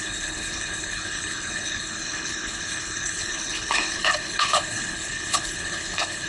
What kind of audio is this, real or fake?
fake